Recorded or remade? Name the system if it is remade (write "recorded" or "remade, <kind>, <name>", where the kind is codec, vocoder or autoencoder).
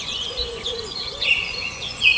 remade, vocoder, Vocos